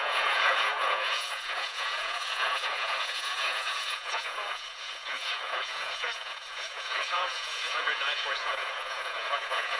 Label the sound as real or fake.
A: fake